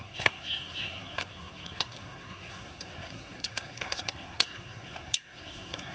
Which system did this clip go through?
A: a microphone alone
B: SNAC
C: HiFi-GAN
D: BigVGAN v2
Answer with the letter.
B